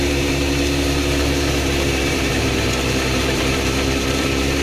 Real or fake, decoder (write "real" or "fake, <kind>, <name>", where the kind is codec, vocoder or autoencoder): fake, vocoder, BigVGAN v2